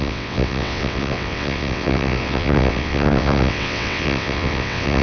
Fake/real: fake